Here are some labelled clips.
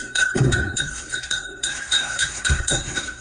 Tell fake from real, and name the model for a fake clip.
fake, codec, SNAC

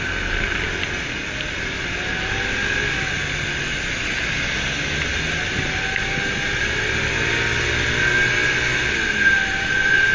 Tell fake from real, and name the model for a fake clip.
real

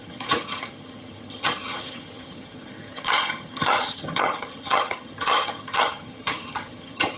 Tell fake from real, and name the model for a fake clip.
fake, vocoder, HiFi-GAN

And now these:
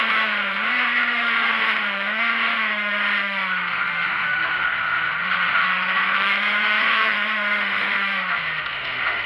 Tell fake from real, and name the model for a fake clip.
fake, autoencoder, DAC-VAE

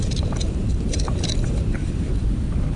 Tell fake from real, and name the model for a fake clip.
fake, vocoder, BigVGAN v2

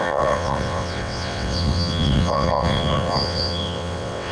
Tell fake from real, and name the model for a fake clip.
fake, vocoder, WaveNeXt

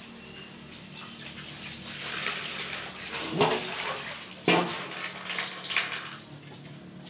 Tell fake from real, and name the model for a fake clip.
real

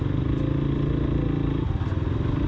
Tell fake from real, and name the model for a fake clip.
real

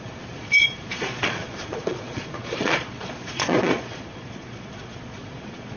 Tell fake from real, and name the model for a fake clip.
fake, vocoder, Vocos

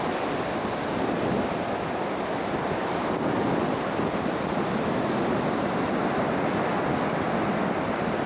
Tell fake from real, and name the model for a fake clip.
real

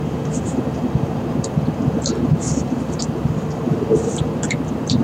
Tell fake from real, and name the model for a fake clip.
fake, vocoder, BigVGAN v2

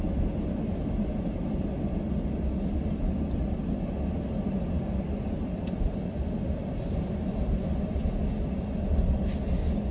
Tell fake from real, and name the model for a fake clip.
real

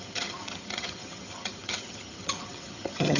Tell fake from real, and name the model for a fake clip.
fake, vocoder, HiFi-GAN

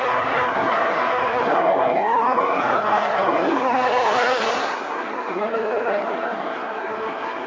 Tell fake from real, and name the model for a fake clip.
fake, codec, SNAC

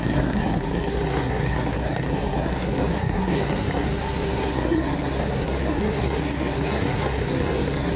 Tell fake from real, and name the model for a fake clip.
fake, codec, SNAC